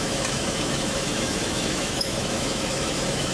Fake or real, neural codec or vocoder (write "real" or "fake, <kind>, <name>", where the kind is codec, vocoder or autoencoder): fake, autoencoder, DAC-VAE